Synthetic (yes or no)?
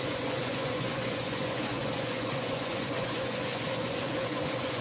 yes